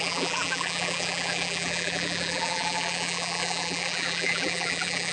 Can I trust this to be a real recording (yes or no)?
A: no